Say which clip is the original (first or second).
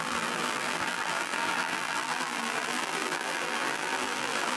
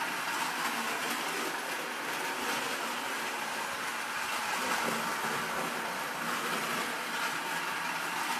second